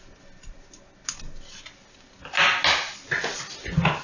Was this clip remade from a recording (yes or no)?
no